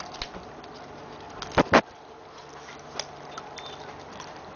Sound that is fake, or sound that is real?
real